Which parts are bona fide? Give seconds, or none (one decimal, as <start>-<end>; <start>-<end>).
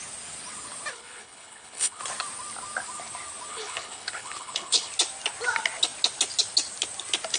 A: 0.0-0.9; 2.0-3.5; 4.9-7.4